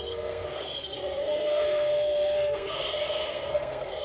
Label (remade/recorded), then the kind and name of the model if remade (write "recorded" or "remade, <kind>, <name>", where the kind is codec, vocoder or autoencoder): remade, codec, SNAC